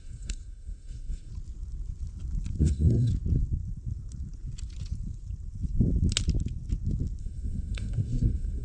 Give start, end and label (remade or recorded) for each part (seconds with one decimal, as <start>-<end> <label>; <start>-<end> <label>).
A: 0.0-1.3 remade; 1.3-2.6 recorded; 2.6-3.1 remade; 3.1-7.2 recorded; 7.2-8.6 remade